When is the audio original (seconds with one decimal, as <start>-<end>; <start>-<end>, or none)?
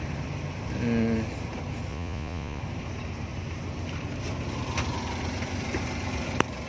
0.0-1.9; 2.6-6.7